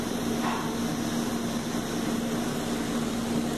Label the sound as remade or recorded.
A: recorded